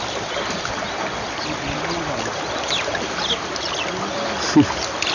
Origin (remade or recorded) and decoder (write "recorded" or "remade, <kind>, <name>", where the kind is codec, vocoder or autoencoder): recorded